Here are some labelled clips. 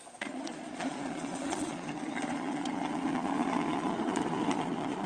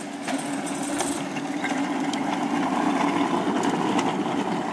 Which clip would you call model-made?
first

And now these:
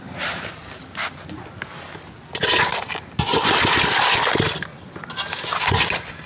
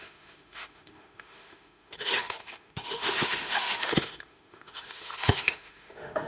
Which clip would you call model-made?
second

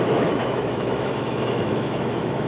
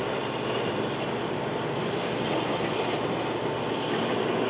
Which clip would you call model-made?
first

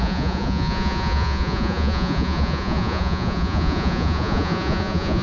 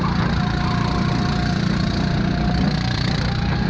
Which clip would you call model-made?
first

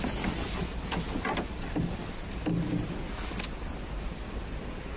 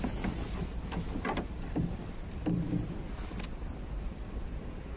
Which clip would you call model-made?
second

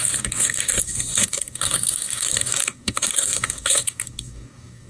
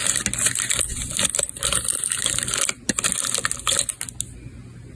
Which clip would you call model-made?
first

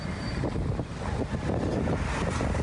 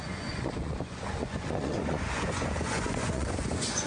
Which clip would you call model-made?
second